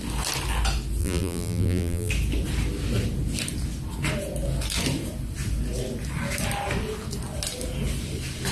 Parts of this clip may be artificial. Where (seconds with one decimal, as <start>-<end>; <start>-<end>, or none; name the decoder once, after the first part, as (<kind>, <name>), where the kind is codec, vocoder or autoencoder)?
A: 1.0-2.1 (vocoder, BigVGAN v2)